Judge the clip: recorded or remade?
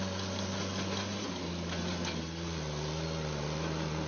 recorded